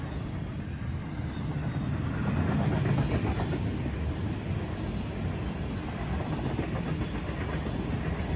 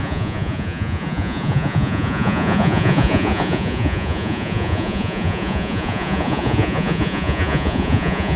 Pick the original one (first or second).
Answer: first